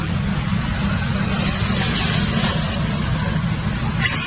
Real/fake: real